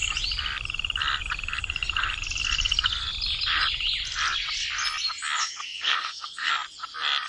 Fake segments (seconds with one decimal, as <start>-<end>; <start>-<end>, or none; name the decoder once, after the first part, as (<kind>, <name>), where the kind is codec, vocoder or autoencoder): 5.4-6.5 (codec, SNAC)